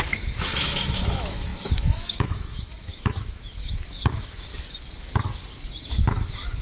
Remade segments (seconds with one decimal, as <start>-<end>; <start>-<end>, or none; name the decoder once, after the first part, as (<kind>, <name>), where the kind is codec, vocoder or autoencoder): 0.0-4.5 (autoencoder, DAC-VAE); 5.8-6.6